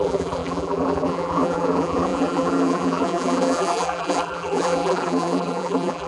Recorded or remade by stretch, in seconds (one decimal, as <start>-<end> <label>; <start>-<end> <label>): 0.0-6.1 remade